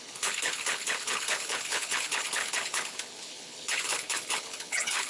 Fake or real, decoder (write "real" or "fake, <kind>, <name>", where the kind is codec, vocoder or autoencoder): fake, codec, HILCodec